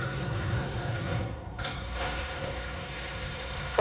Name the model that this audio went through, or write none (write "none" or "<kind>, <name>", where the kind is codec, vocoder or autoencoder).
codec, SNAC